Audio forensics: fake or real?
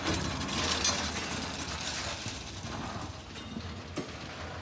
real